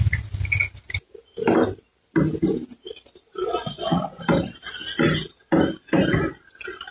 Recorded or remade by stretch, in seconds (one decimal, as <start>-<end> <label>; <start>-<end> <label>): 0.0-3.4 recorded; 3.4-4.2 remade; 4.2-6.9 recorded